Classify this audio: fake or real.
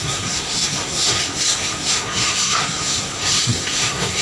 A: fake